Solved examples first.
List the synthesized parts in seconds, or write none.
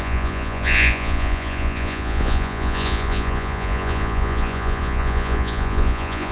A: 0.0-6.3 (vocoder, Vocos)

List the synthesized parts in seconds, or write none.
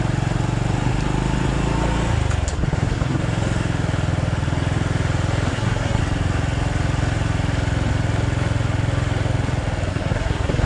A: 2.5-3.2 (codec, SNAC); 5.5-6.0; 9.9-10.7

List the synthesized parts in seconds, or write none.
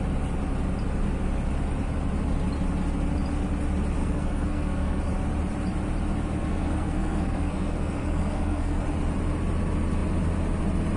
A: 4.0-5.0 (codec, SNAC); 6.5-8.8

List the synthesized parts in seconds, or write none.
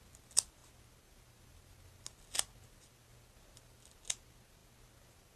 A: none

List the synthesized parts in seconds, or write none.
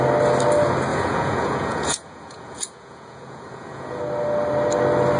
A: 0.9-4.0 (vocoder, Vocos)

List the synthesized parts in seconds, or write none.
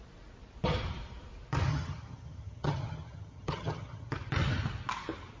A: 1.7-4.1 (vocoder, HiFi-GAN)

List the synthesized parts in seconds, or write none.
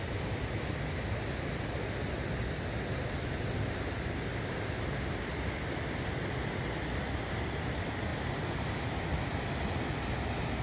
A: none